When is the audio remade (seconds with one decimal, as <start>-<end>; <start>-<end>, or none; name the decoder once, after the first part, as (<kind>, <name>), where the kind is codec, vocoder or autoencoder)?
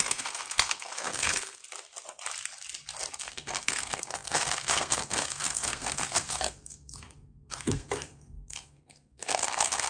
0.0-1.6 (codec, SNAC); 3.2-9.9